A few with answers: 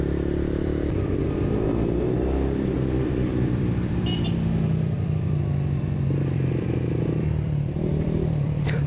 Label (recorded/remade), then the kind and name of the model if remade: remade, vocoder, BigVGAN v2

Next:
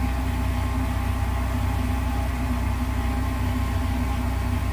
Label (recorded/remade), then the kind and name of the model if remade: recorded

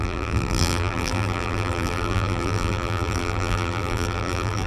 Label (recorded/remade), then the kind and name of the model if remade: remade, vocoder, BigVGAN v2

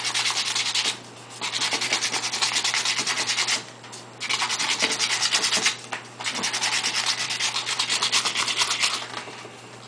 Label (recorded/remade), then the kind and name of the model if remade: recorded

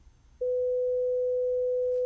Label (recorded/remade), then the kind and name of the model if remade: recorded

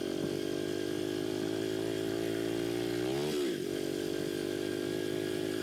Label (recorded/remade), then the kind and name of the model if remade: recorded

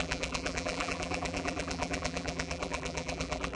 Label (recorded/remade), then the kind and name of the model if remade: remade, vocoder, BigVGAN v2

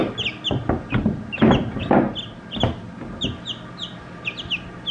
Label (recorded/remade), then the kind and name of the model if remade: recorded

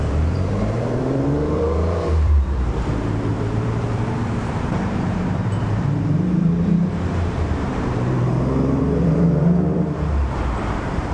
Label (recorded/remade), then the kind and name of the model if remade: remade, vocoder, BigVGAN v2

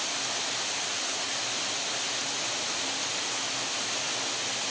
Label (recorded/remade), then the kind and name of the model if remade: recorded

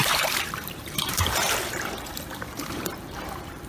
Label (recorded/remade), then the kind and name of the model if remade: remade, vocoder, BigVGAN v2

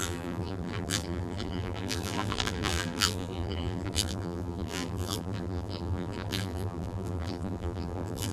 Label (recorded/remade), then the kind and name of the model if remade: remade, vocoder, BigVGAN v2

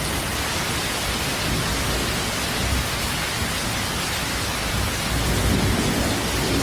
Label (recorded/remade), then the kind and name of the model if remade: recorded